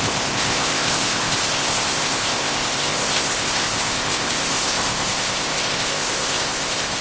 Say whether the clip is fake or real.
fake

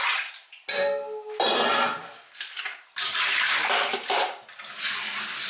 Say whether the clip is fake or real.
real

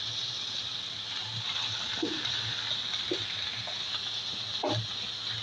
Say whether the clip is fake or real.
real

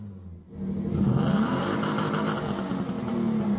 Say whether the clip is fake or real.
real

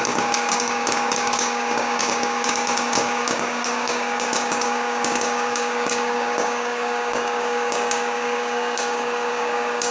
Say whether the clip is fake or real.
fake